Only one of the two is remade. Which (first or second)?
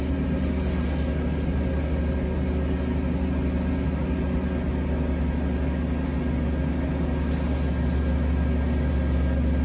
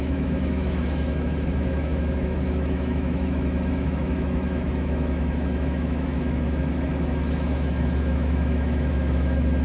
second